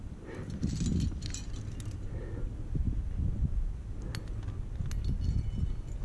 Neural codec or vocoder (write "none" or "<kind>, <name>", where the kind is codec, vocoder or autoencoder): none